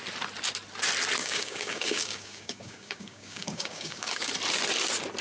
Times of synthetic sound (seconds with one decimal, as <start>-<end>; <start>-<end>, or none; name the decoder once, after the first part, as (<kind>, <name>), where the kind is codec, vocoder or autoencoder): 1.2-4.3 (codec, DAC)